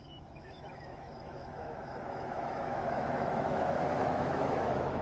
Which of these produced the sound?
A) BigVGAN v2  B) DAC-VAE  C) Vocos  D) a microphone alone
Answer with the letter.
B